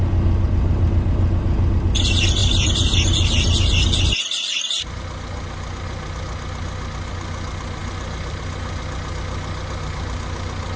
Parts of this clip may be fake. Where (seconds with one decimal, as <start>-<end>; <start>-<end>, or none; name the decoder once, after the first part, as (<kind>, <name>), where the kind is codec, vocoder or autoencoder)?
2.4-5.0 (vocoder, BigVGAN v2); 7.8-8.4